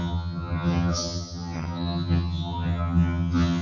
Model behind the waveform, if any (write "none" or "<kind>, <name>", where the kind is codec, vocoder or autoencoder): vocoder, HiFi-GAN